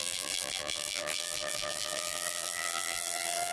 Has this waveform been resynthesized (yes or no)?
yes